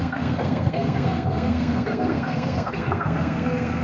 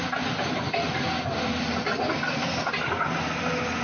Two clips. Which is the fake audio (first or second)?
first